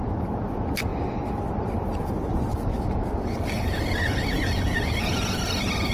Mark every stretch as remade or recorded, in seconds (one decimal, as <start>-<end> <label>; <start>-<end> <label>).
0.0-5.9 recorded

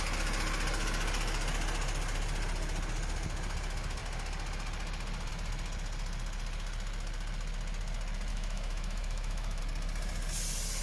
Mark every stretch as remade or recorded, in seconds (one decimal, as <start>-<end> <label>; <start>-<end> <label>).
0.0-8.3 recorded; 8.3-9.6 remade; 9.6-10.8 recorded

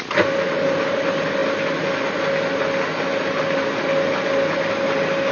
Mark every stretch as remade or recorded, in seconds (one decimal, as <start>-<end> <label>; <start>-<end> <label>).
0.0-5.3 recorded

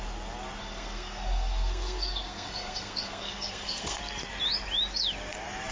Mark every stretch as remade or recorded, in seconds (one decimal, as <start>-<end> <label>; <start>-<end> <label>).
0.0-0.6 recorded; 0.6-4.0 remade; 4.0-5.7 recorded